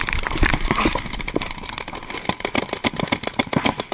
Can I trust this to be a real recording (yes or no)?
no